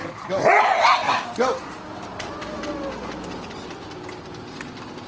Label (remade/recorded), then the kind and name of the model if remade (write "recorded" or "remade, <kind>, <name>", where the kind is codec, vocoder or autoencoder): recorded